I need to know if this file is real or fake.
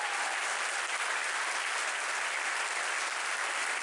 real